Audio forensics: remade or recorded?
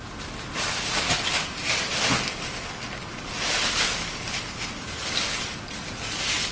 recorded